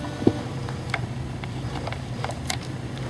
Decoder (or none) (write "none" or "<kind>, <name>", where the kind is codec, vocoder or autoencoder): none